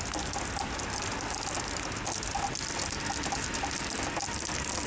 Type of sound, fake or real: real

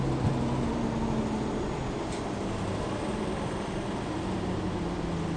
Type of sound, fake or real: real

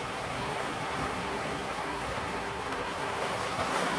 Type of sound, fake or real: fake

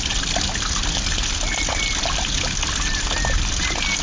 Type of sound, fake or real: real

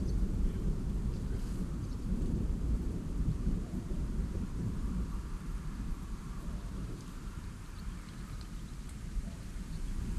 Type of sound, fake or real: fake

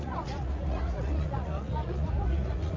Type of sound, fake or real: fake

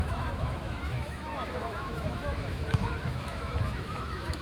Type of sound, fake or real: fake